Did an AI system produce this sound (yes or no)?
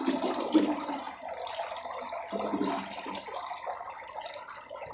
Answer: no